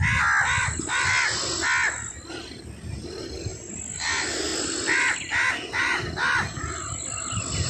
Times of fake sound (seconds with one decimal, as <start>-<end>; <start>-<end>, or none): 3.5-4.1